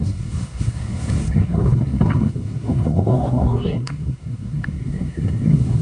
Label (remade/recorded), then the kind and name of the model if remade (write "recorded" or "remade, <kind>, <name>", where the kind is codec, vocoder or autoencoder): remade, codec, SNAC